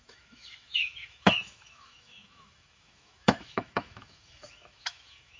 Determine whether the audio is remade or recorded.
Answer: remade